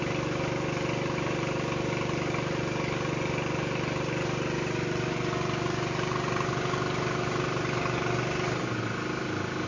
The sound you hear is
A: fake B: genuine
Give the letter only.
B